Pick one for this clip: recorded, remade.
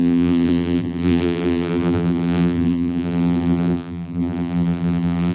remade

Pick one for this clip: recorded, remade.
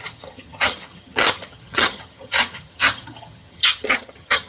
remade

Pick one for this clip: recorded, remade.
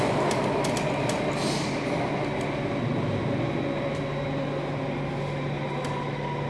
recorded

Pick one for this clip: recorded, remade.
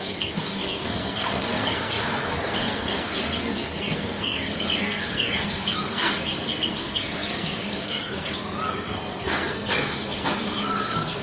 remade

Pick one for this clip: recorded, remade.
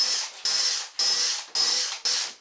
recorded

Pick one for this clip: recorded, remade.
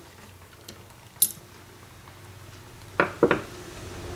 recorded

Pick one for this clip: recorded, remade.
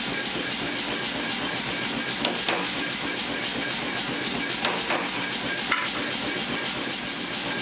recorded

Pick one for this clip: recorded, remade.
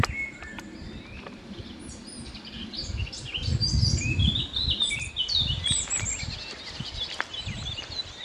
recorded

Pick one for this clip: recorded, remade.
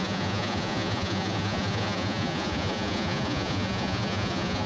remade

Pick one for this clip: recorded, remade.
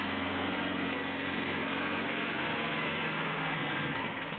remade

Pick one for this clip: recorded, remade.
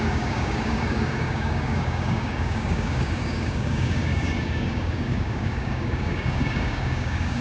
remade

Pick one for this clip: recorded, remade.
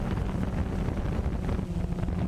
recorded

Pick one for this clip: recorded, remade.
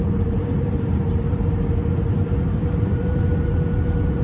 remade